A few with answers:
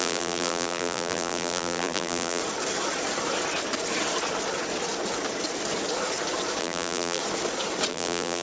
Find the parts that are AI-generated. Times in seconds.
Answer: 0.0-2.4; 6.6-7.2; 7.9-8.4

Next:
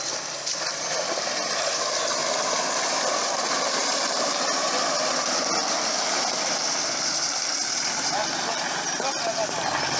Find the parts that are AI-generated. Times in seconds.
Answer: 0.0-2.2; 3.0-10.0

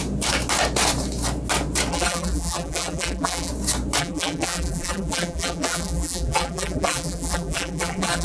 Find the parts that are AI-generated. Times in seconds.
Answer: 1.9-3.5; 4.0-8.2

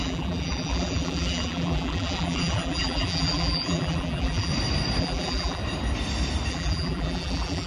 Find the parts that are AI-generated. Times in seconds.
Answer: 0.0-4.5; 5.0-5.6; 6.5-7.7

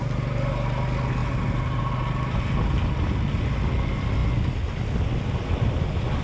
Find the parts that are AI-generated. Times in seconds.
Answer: none